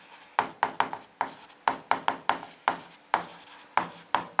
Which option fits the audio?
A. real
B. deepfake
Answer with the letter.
A